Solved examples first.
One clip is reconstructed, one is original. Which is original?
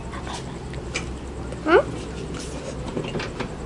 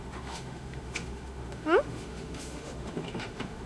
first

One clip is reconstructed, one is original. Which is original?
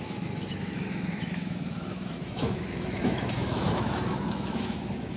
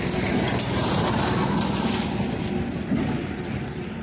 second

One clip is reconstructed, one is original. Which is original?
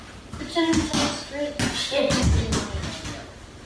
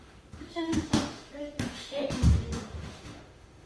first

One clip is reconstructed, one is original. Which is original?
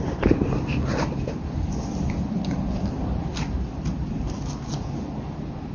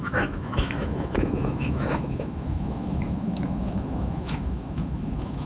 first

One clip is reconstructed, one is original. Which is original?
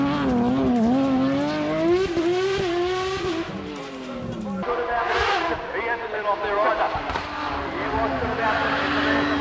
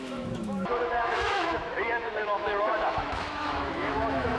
first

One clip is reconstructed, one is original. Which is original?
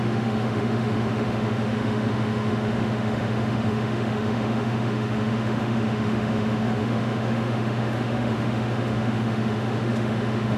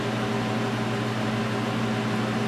second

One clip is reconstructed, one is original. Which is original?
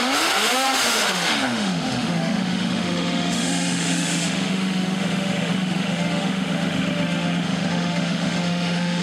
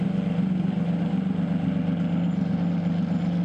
second